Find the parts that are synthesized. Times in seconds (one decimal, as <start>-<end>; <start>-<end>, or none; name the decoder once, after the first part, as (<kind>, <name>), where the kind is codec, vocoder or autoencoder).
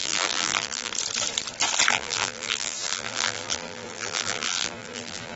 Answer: 0.0-0.9 (vocoder, BigVGAN v2); 1.9-5.4